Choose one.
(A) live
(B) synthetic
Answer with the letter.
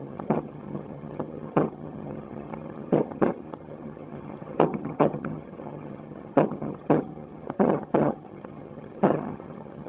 B